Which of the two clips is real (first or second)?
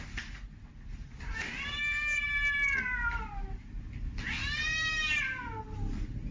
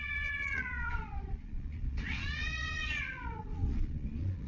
first